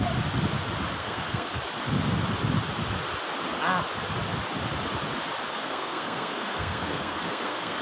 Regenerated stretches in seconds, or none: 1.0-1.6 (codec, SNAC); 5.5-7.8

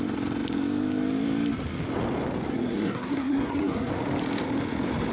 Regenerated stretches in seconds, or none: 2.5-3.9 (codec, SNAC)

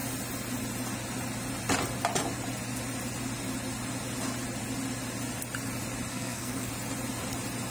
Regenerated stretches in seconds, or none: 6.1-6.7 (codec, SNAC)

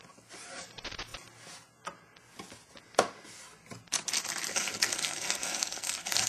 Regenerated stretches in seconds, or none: 4.5-6.3 (codec, SNAC)